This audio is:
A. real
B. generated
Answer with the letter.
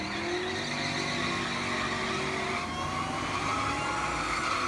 A